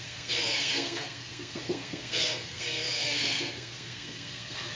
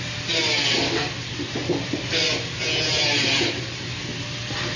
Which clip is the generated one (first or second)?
first